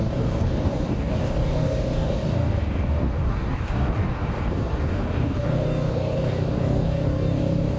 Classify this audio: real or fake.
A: fake